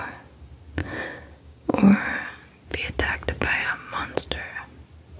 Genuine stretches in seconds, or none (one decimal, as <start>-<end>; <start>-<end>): 0.0-0.8; 1.7-3.6; 4.2-5.2